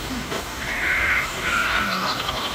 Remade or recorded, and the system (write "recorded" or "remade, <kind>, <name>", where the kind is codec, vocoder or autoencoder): remade, codec, DAC